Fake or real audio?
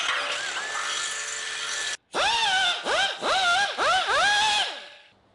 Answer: real